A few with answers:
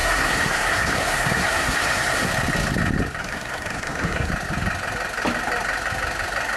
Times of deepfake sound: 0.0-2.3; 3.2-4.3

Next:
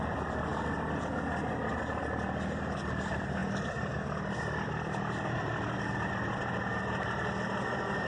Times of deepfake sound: none

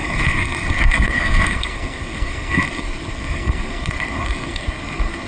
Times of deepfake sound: 0.0-5.3

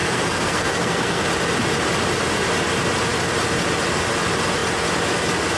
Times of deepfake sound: 0.0-1.2

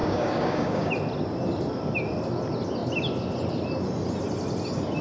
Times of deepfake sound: 0.0-0.9

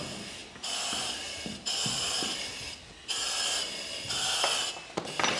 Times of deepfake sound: none